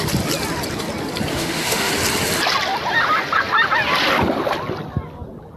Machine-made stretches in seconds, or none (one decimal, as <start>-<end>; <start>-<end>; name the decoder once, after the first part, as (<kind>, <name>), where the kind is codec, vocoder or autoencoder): 1.3-1.9 (autoencoder, DAC-VAE)